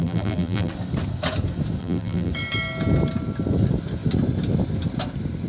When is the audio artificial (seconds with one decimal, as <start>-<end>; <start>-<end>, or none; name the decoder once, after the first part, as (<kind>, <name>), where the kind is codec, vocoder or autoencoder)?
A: 0.0-0.7 (vocoder, BigVGAN v2); 1.8-2.3